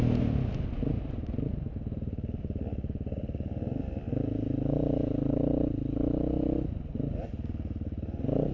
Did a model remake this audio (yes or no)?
no